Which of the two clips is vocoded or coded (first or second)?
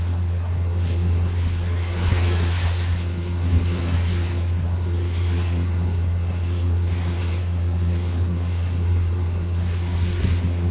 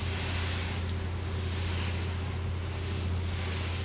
first